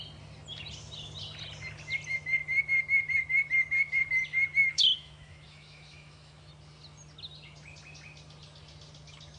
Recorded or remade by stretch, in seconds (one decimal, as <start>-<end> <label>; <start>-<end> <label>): 0.0-4.6 recorded; 4.6-6.5 remade; 6.5-9.4 recorded